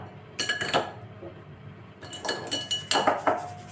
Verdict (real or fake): real